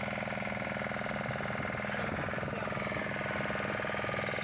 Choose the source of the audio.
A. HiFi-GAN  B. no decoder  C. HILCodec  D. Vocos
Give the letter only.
B